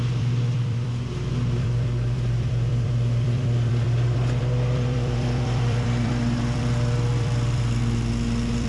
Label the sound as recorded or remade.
remade